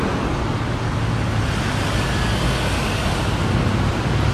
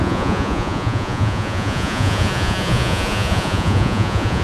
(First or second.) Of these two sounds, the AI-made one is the second